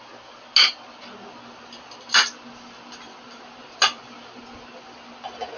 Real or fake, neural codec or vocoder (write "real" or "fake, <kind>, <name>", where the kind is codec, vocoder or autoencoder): real